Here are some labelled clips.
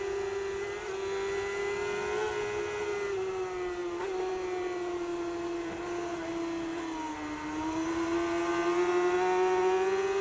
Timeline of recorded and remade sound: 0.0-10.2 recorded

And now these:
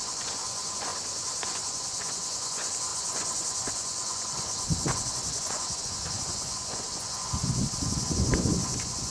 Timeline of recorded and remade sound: 0.0-9.1 remade

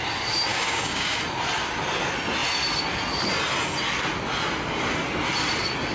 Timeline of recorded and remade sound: 0.0-0.5 recorded; 0.5-1.2 remade; 1.2-5.9 recorded

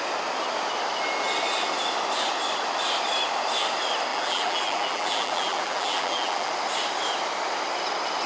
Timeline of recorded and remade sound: 0.0-4.1 recorded; 4.1-6.5 remade; 6.5-8.3 recorded

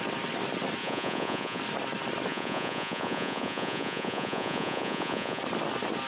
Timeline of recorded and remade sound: 0.0-0.8 recorded; 0.8-1.6 remade; 1.6-2.3 recorded; 2.3-5.4 remade; 5.4-6.1 recorded

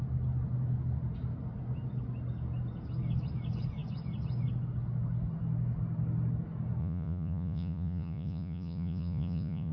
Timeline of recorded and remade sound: 0.0-6.8 recorded; 6.8-9.7 remade

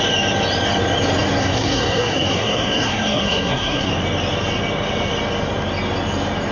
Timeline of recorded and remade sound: 0.0-1.4 recorded; 1.4-3.9 remade; 3.9-6.5 recorded